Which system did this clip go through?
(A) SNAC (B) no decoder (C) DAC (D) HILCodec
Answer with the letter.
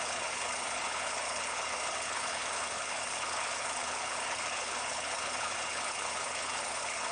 D